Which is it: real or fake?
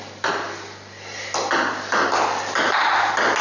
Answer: real